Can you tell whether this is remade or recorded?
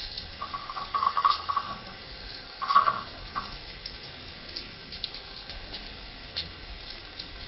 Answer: remade